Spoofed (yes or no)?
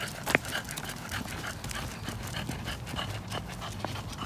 no